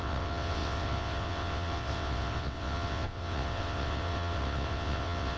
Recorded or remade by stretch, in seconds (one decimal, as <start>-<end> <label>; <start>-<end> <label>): 0.0-5.4 remade